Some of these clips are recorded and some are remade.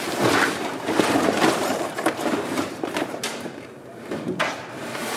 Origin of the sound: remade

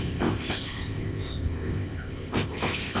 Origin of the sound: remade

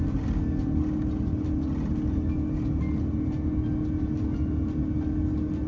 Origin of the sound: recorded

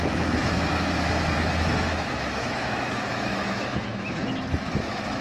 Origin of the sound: remade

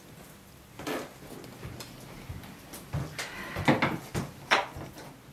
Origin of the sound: recorded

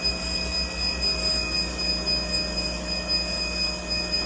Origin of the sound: recorded